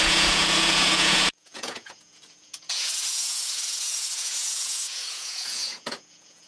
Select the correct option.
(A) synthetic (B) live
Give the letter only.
A